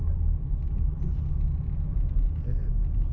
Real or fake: real